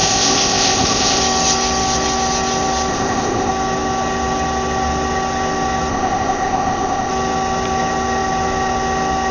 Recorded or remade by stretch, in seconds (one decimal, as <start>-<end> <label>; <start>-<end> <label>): 0.0-1.2 remade; 1.2-2.9 recorded; 2.9-3.5 remade; 3.5-5.9 recorded; 5.9-7.1 remade; 7.1-9.3 recorded